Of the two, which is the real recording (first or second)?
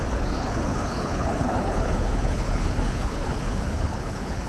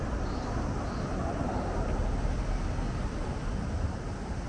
second